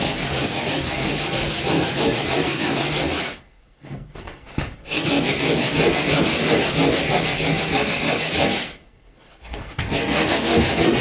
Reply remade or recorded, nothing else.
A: remade